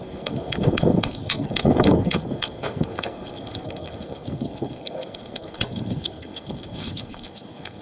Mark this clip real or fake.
fake